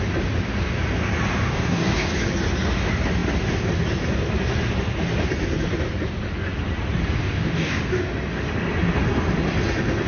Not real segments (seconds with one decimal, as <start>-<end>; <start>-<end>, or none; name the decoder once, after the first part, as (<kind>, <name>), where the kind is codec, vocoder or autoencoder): 1.3-2.1 (codec, DAC); 7.2-7.8